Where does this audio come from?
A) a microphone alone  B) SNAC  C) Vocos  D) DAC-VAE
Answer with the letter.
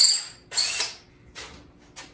A